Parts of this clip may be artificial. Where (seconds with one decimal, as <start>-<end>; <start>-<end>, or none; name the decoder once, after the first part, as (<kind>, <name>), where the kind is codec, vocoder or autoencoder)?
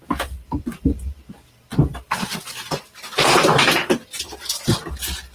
1.7-4.8 (vocoder, BigVGAN v2)